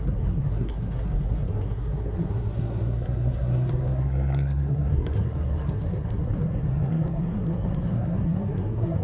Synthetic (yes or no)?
yes